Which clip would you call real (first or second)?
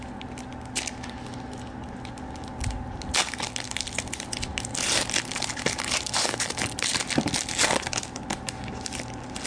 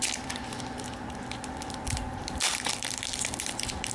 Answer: first